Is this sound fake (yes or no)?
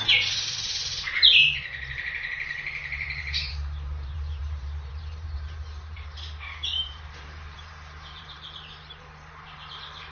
yes